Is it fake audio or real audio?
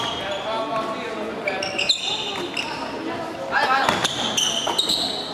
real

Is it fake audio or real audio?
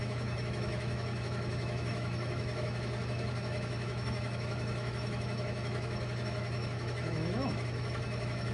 fake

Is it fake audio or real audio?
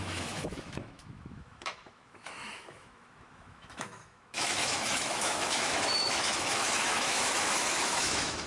fake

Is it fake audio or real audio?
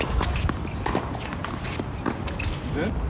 real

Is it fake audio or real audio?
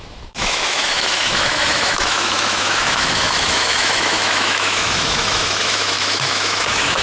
fake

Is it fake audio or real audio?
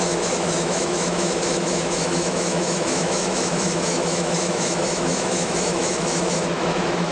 fake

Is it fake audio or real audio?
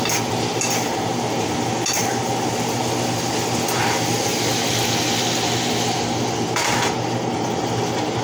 real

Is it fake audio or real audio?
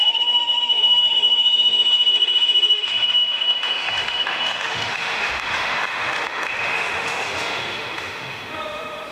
fake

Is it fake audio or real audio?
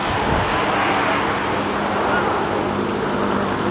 real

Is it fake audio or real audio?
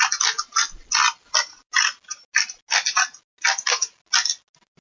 real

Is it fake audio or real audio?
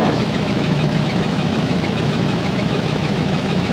fake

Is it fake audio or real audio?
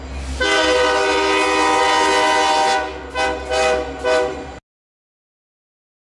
real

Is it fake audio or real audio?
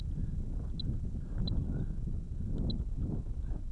real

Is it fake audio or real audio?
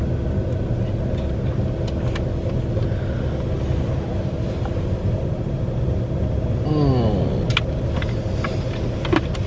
real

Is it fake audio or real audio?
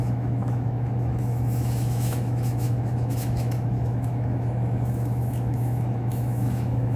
fake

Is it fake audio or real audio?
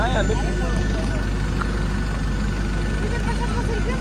real